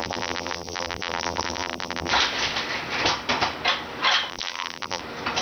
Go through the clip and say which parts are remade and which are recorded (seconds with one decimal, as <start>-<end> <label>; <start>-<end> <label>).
0.0-2.1 remade; 2.1-4.3 recorded; 4.3-5.0 remade; 5.0-5.4 recorded